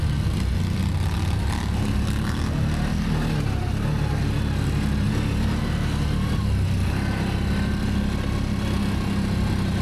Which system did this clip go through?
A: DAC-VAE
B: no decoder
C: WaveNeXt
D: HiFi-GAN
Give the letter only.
B